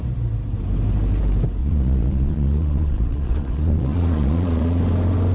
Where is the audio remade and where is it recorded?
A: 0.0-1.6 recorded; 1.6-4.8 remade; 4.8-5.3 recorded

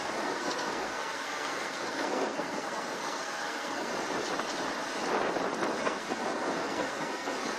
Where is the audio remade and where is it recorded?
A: 0.0-3.9 remade; 3.9-5.8 recorded; 5.8-7.6 remade

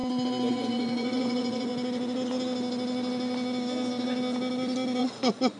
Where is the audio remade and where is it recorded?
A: 0.0-0.5 recorded; 0.5-1.7 remade; 1.7-5.0 recorded; 5.0-5.6 remade